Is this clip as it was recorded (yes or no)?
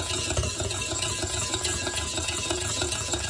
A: no